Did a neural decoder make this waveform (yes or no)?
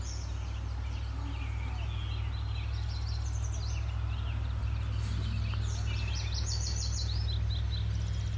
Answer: no